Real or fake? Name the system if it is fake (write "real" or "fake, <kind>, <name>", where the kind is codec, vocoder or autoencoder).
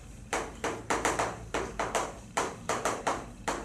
fake, vocoder, BigVGAN v2